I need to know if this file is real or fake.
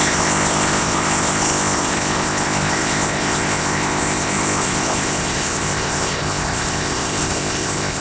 fake